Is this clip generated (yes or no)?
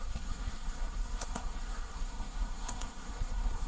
yes